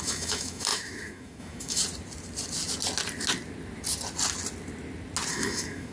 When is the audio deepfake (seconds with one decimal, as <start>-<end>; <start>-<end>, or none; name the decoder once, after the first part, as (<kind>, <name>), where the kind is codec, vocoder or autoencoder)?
0.0-1.8 (autoencoder, DAC-VAE); 5.3-5.9

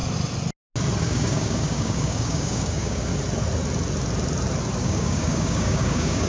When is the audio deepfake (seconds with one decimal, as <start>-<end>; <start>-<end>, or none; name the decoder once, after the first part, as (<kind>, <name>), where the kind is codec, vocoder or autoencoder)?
1.0-3.1 (codec, DAC); 4.8-6.3

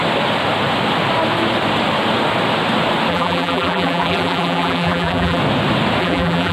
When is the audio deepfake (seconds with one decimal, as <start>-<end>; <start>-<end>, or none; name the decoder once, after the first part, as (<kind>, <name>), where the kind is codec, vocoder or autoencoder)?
3.1-5.4 (vocoder, BigVGAN v2); 6.0-6.5

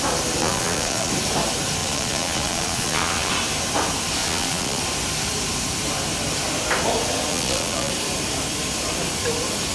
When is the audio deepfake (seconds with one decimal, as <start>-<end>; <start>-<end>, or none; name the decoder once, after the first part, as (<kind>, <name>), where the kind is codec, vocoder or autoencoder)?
0.4-1.1 (vocoder, Vocos); 1.8-3.3; 4.2-4.8; 7.3-7.9

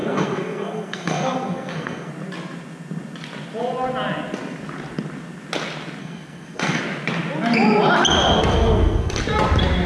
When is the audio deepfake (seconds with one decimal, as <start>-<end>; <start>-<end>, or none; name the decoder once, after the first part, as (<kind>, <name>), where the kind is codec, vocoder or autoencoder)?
0.0-2.1 (codec, SNAC); 6.0-6.8; 8.5-9.2

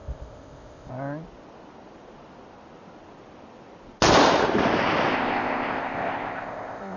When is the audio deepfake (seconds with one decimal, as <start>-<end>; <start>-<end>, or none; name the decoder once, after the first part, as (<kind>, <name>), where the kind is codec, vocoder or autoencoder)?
0.0-0.9 (codec, ZipCodec); 5.1-7.0

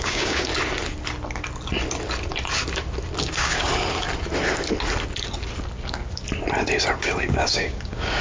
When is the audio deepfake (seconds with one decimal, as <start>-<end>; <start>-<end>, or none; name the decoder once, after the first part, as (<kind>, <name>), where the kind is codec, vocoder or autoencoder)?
0.0-0.5 (codec, DAC); 3.2-3.7; 7.0-8.2